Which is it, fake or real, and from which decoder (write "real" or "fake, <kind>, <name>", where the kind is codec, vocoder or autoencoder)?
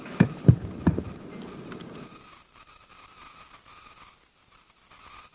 real